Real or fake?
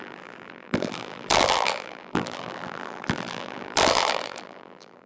fake